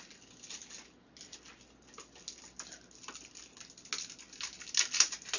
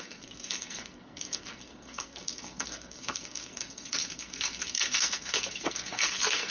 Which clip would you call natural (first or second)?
first